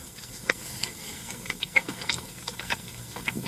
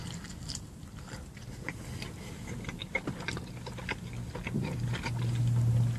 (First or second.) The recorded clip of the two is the second